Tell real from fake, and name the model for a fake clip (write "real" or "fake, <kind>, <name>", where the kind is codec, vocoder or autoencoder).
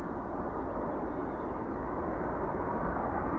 real